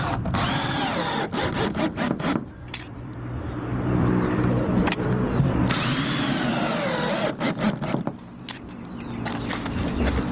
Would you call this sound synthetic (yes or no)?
yes